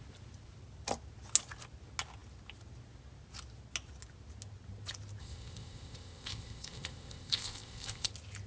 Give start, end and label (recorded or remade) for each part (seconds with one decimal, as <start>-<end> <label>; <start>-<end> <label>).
0.0-5.2 recorded; 5.2-8.1 remade; 8.1-8.5 recorded